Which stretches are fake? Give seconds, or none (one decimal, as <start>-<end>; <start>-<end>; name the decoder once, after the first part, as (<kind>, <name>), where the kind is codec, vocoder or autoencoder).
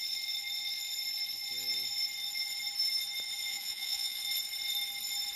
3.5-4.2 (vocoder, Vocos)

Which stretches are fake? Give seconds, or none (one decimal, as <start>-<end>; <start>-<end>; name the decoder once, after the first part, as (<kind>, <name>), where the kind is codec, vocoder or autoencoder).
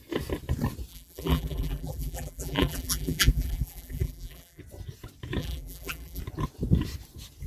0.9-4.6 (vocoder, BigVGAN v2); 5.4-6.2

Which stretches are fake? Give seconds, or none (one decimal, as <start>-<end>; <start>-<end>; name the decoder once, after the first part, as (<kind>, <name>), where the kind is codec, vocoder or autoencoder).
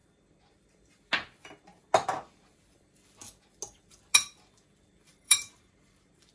5.1-6.3 (vocoder, BigVGAN v2)